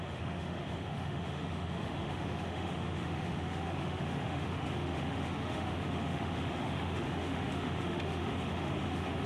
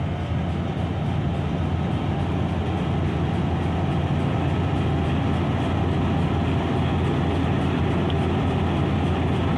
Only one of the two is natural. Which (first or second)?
second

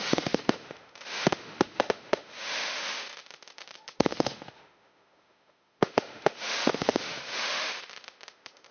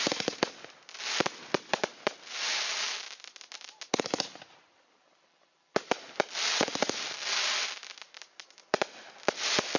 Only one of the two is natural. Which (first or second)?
second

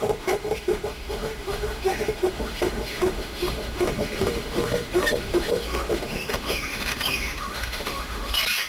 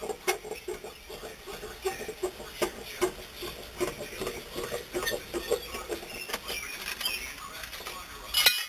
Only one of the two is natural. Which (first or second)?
second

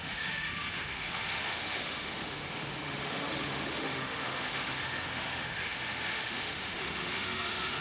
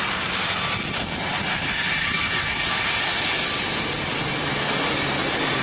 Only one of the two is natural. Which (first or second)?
second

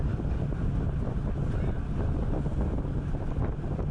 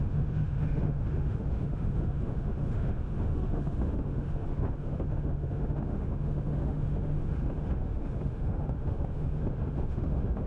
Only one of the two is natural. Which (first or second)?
first